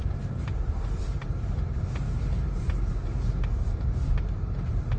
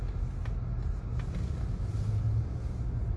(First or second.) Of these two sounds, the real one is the second